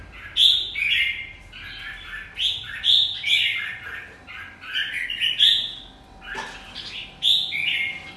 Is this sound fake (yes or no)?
no